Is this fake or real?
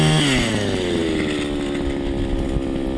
real